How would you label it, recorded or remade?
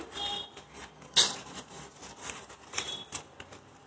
recorded